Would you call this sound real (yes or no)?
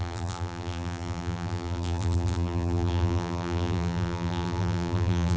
no